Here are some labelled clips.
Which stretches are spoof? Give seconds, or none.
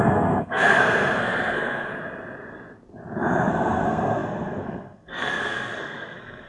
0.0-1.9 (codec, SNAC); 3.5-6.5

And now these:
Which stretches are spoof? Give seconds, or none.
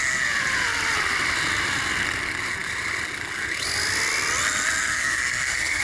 4.8-5.8 (codec, SNAC)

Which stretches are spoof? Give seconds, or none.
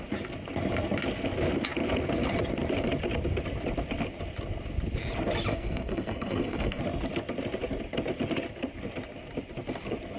5.5-6.8 (codec, SNAC)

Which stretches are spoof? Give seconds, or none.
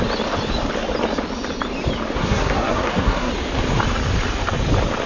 2.2-3.3 (codec, SNAC)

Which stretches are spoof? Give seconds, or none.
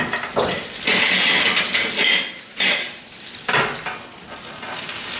none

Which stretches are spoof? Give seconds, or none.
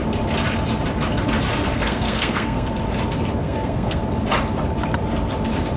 1.7-2.7 (codec, SNAC); 3.4-4.0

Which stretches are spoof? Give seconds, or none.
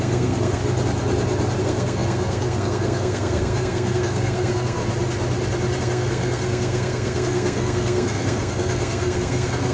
0.0-0.6 (codec, SNAC); 1.6-4.8; 5.8-9.7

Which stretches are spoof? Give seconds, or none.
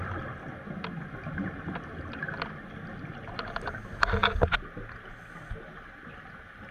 none